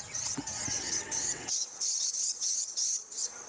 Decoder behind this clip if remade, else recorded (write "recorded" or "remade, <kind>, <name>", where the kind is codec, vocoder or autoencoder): remade, vocoder, WaveNeXt